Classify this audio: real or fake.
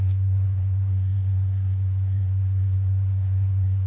fake